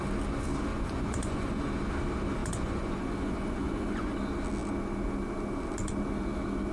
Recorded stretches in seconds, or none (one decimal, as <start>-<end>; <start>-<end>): 0.0-0.7; 1.6-2.4; 4.1-6.7